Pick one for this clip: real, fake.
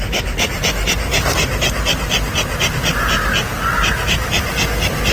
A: real